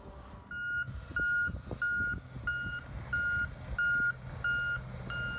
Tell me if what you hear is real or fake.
real